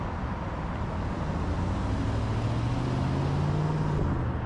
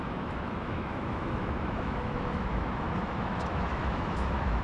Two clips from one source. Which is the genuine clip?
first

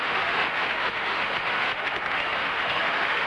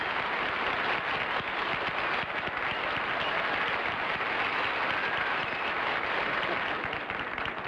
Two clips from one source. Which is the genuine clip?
second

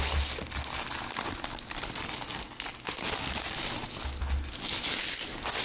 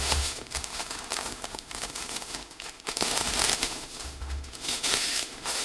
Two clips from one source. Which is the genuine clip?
first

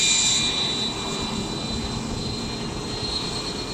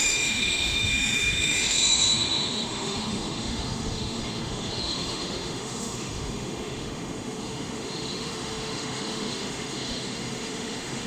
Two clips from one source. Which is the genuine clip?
first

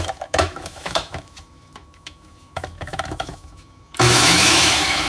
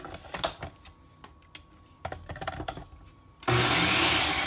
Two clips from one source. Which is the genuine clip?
second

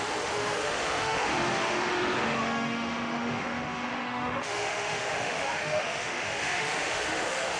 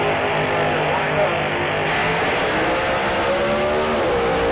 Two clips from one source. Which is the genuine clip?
second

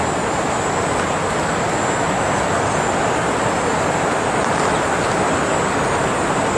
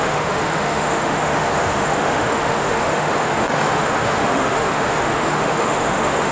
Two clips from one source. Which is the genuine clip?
first